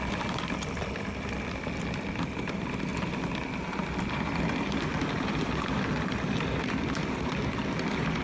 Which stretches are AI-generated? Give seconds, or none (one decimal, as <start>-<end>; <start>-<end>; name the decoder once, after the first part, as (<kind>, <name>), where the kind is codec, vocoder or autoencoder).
0.0-2.9 (vocoder, BigVGAN v2); 4.1-8.2